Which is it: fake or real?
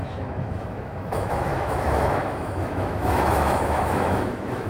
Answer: fake